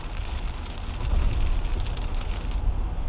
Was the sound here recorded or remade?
recorded